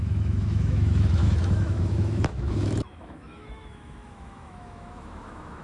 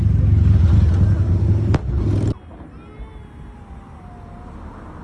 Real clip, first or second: second